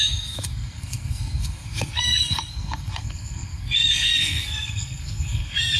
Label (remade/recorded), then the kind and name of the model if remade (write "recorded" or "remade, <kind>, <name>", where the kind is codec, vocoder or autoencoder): remade, codec, SNAC